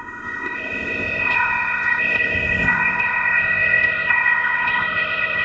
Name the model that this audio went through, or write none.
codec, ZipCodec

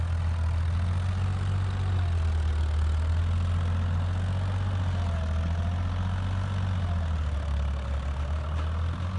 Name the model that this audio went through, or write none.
none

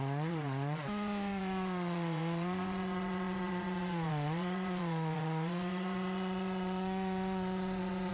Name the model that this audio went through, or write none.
vocoder, Vocos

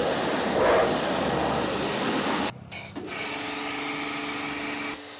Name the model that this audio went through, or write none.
none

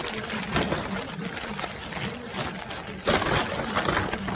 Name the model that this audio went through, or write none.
none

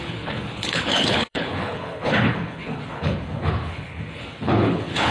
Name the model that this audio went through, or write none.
codec, HILCodec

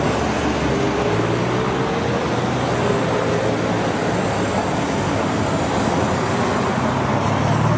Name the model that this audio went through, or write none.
none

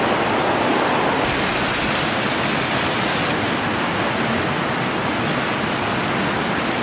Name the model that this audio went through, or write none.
none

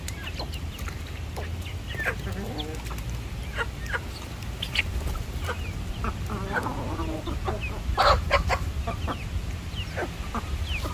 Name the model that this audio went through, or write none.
none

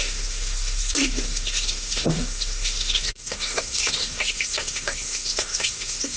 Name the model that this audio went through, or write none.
codec, SNAC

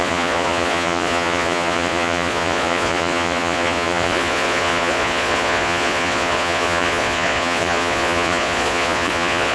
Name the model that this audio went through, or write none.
vocoder, Vocos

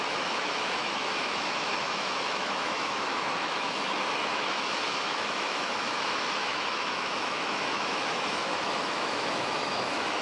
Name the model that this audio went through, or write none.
autoencoder, DAC-VAE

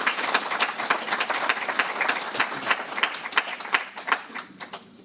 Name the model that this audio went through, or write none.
vocoder, BigVGAN v2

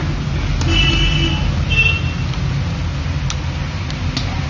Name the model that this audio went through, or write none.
none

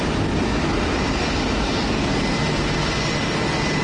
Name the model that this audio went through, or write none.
none